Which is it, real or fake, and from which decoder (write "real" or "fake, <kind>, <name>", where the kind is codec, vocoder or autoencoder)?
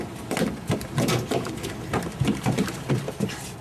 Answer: fake, vocoder, BigVGAN v2